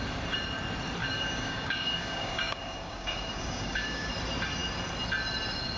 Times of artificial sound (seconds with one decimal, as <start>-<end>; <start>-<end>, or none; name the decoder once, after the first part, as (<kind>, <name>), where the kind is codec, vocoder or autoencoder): 1.0-4.1 (codec, DAC)